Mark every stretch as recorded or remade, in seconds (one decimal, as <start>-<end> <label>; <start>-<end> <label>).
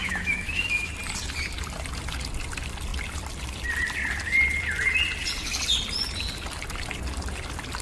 0.0-0.9 remade; 0.9-7.8 recorded